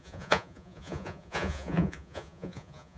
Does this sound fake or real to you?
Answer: fake